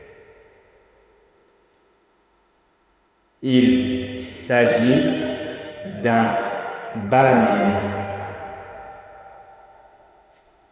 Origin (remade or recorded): remade